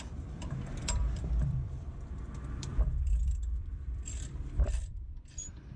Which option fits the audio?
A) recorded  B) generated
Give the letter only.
B